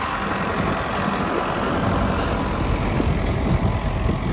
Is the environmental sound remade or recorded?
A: recorded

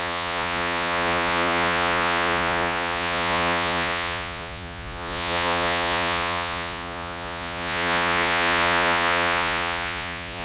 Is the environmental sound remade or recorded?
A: remade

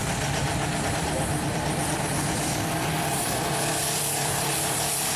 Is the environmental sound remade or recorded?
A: remade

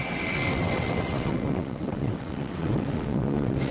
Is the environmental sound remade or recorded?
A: remade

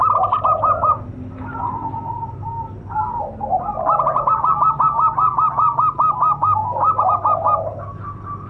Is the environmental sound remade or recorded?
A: recorded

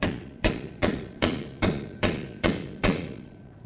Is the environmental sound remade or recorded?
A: remade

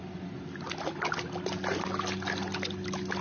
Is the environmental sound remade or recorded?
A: recorded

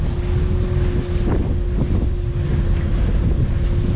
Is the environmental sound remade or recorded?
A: recorded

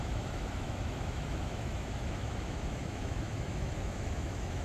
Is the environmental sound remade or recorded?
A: remade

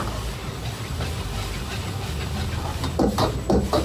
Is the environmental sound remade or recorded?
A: recorded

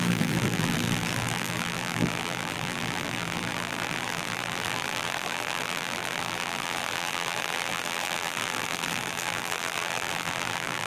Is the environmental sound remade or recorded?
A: remade